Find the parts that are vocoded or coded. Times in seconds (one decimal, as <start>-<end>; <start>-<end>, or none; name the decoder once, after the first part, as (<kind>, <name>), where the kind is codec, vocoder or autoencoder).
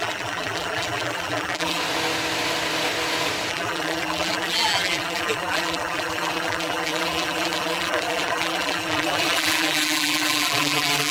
0.0-1.8 (vocoder, BigVGAN v2); 3.5-11.1